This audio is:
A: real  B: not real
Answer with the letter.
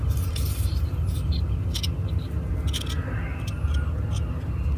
A